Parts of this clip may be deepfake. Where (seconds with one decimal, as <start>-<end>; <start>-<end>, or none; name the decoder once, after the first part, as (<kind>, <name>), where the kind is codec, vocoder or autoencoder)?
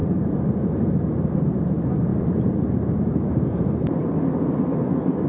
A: 0.0-1.7 (vocoder, BigVGAN v2); 2.1-4.2